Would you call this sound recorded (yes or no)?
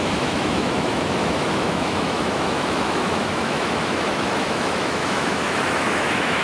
no